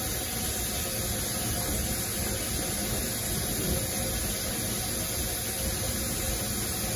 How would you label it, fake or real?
real